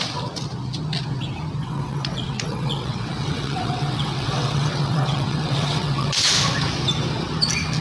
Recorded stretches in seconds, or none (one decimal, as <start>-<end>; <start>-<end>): 0.0-1.6; 6.3-7.8